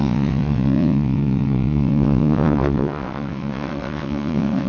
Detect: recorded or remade remade